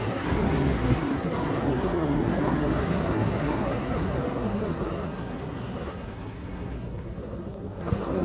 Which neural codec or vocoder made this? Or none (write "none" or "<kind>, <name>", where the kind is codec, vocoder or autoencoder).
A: codec, SNAC